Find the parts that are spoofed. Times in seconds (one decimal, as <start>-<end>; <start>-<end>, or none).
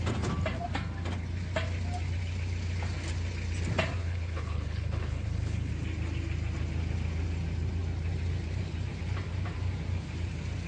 4.0-5.7